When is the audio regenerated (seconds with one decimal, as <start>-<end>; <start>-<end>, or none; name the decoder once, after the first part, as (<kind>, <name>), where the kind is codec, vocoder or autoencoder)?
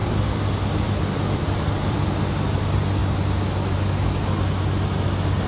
0.0-2.2 (vocoder, BigVGAN v2)